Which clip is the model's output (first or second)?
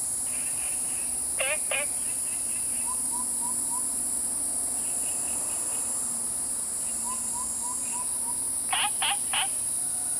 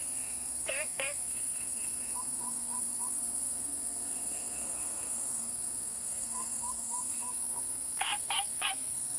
second